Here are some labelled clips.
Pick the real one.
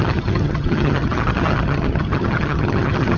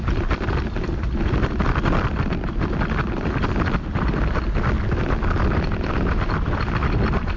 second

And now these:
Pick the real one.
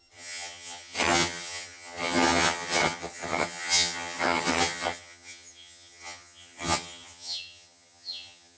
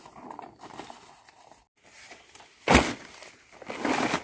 second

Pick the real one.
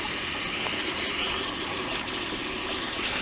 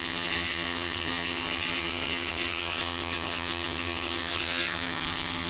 first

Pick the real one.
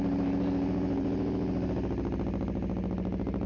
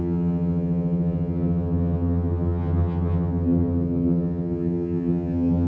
first